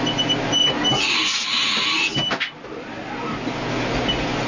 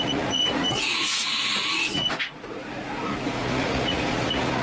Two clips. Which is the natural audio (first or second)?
first